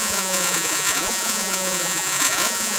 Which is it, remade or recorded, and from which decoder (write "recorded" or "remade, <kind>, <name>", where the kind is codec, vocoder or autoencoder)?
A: remade, vocoder, Vocos